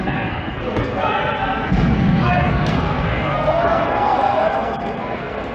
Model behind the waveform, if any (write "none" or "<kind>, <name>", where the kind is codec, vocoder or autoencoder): codec, SNAC